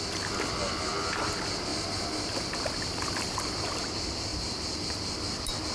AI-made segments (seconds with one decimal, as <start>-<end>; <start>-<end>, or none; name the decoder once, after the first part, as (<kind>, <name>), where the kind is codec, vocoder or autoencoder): 1.7-3.8 (vocoder, BigVGAN v2); 4.3-5.7